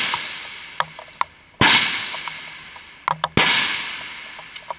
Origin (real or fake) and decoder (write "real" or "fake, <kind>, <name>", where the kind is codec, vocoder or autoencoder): real